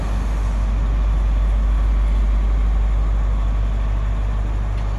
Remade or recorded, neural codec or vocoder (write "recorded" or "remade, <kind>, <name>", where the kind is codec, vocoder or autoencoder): recorded